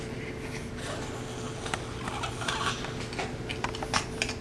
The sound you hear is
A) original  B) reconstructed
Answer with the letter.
A